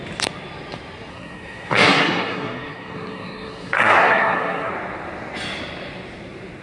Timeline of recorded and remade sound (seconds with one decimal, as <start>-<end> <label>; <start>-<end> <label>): 0.0-1.1 recorded; 1.1-4.7 remade; 4.7-6.6 recorded